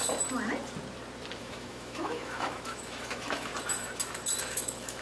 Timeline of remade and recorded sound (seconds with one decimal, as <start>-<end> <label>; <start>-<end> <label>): 0.0-1.4 recorded; 1.4-3.5 remade; 3.5-4.4 recorded; 4.4-5.0 remade